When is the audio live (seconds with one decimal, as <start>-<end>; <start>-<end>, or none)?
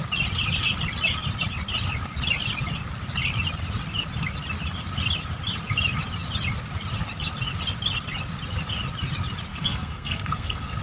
0.0-9.5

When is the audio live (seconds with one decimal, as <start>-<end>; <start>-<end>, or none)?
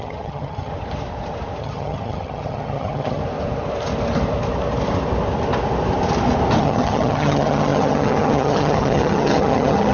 0.7-1.6; 3.2-6.6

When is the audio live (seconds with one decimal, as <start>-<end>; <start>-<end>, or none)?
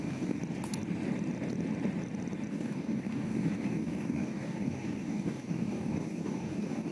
0.4-2.5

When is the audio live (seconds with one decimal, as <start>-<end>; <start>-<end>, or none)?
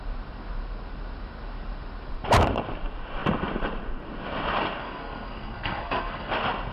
0.0-4.8; 6.3-6.7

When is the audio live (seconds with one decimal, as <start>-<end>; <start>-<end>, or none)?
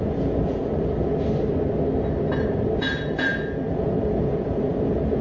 0.6-2.8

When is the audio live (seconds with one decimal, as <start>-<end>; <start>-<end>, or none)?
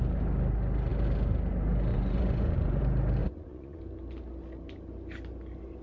0.0-1.9; 2.8-3.2; 3.8-5.8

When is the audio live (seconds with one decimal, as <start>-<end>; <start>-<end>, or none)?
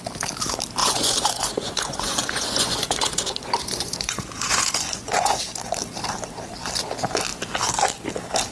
0.0-0.8; 5.4-8.5